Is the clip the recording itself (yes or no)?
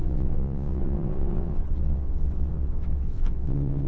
no